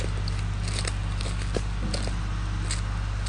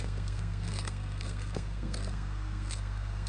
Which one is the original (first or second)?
first